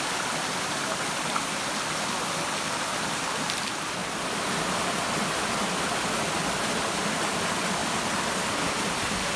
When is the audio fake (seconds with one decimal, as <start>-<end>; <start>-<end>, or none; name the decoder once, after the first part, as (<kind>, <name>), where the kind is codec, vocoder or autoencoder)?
none